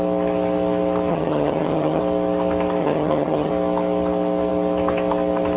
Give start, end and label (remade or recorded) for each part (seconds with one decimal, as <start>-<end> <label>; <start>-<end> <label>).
0.0-1.1 recorded; 1.1-2.0 remade; 2.0-2.8 recorded; 2.8-3.5 remade; 3.5-5.6 recorded